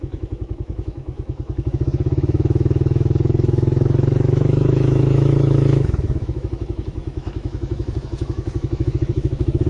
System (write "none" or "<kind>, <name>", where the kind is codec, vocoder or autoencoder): autoencoder, DAC-VAE